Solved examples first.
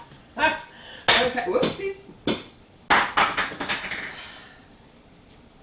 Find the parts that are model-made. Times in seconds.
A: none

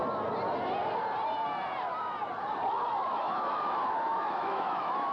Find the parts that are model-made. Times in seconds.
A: 3.1-5.1 (autoencoder, DAC-VAE)